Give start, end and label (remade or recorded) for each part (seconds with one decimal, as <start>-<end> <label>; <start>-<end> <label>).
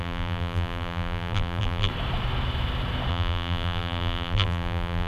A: 0.0-1.9 remade; 1.9-3.1 recorded; 3.1-5.1 remade